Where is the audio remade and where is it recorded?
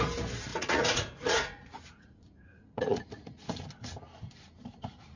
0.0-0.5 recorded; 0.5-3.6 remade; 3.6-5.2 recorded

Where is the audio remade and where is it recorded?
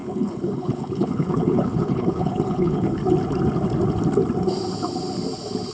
0.0-3.0 remade; 3.0-5.7 recorded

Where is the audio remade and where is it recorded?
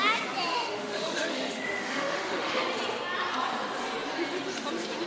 0.0-0.5 recorded; 0.5-2.6 remade; 2.6-5.1 recorded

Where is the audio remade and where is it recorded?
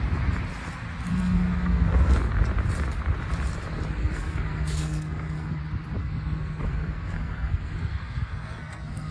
0.0-1.1 recorded; 1.1-2.3 remade; 2.3-4.0 recorded; 4.0-5.6 remade; 5.6-6.0 recorded; 6.0-9.1 remade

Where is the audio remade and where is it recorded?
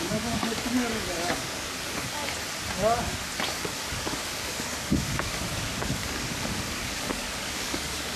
0.0-2.2 remade; 2.2-3.5 recorded; 3.5-8.2 remade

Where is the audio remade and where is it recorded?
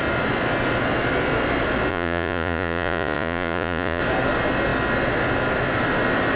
0.0-1.9 recorded; 1.9-4.0 remade; 4.0-6.4 recorded